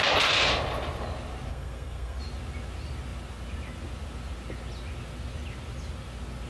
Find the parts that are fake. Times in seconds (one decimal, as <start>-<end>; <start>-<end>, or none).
1.5-2.2